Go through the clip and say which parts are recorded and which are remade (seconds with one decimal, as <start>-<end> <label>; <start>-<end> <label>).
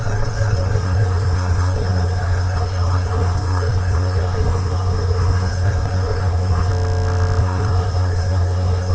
0.0-6.7 remade; 6.7-7.4 recorded; 7.4-8.9 remade